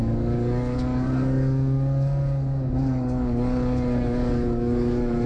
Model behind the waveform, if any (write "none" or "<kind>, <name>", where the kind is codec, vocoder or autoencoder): codec, DAC